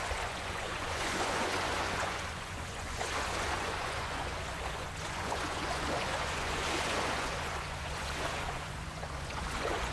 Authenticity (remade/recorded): remade